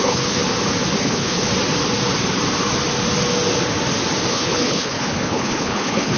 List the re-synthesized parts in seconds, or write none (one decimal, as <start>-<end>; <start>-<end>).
0.0-0.4; 1.0-1.5; 4.3-6.2